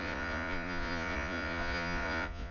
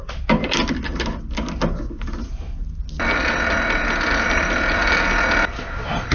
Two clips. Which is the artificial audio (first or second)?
first